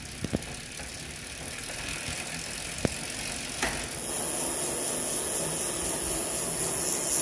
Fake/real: real